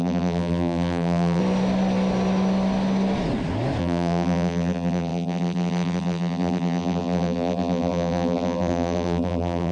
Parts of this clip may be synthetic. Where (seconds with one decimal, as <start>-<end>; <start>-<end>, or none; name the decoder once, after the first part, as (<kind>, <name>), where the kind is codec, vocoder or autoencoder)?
0.0-1.4 (vocoder, BigVGAN v2); 3.8-9.7